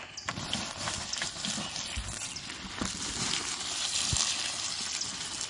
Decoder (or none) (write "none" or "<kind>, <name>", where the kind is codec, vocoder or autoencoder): none